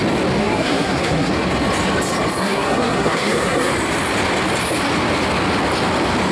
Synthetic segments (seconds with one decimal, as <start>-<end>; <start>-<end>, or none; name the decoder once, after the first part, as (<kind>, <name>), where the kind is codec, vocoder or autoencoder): 0.4-1.3 (codec, SNAC); 2.4-3.7